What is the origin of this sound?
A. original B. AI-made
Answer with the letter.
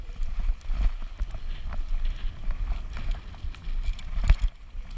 A